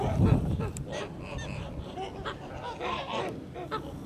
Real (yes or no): no